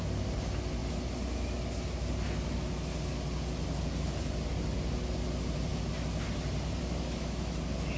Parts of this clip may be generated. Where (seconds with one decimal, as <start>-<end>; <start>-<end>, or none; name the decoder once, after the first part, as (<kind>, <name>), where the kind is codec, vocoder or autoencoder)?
6.8-7.6 (autoencoder, DAC-VAE)